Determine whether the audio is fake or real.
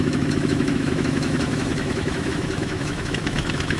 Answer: fake